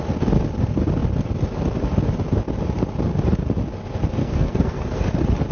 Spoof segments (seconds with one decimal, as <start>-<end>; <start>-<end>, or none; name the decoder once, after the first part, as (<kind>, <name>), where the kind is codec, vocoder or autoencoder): 4.2-5.1 (codec, SNAC)